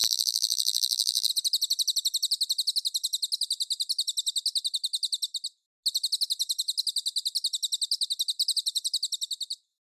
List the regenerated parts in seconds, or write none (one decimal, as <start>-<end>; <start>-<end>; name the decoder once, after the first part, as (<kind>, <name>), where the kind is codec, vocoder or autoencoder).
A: 0.0-1.3 (vocoder, BigVGAN v2)

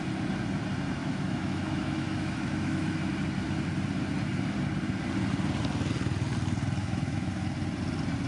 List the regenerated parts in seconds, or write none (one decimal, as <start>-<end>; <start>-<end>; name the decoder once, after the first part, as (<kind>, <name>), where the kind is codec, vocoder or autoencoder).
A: 1.0-2.9 (autoencoder, DAC-VAE); 6.8-7.3

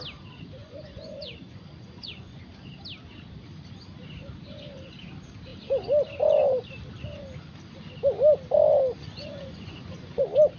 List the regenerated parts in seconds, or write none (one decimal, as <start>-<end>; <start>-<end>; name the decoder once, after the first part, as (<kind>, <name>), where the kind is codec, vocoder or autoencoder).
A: 0.6-2.4 (vocoder, Vocos); 9.0-10.2

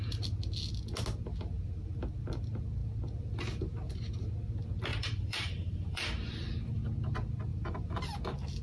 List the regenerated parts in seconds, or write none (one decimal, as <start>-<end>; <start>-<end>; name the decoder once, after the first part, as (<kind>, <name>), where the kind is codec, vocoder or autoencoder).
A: 4.9-6.3 (vocoder, BigVGAN v2); 7.5-8.0

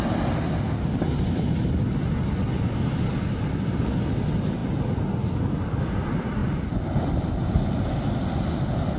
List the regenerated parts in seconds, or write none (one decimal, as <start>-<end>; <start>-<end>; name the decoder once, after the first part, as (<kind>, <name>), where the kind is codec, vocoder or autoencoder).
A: none

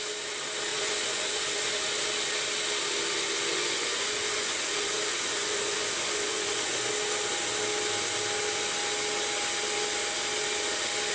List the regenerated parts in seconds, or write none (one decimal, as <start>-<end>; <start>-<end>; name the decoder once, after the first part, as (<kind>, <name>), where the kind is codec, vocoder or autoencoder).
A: 0.7-2.0 (vocoder, Vocos); 3.5-6.9

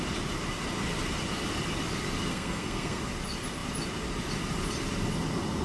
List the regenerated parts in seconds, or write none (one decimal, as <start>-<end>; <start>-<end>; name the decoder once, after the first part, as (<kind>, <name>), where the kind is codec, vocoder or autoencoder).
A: 2.3-3.0 (codec, SNAC)

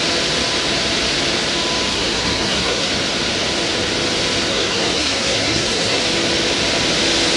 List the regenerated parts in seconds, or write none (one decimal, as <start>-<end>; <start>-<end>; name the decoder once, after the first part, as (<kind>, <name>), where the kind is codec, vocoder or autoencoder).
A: 1.9-2.9 (codec, SNAC); 4.5-6.0